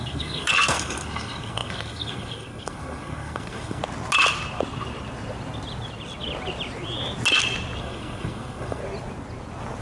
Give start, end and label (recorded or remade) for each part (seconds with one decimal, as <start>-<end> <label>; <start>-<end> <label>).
0.0-3.8 remade; 3.8-7.8 recorded; 7.8-8.8 remade; 8.8-9.8 recorded